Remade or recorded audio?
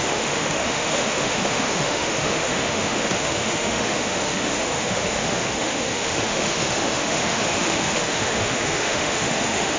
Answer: remade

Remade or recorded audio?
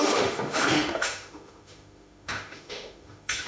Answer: remade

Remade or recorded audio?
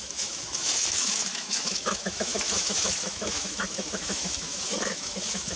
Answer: remade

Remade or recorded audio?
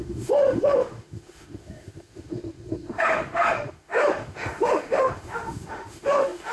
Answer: remade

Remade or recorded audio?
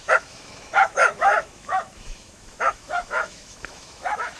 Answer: remade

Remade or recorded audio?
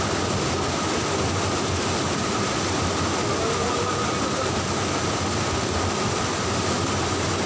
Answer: recorded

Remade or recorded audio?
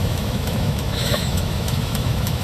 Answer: remade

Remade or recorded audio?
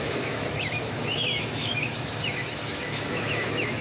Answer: remade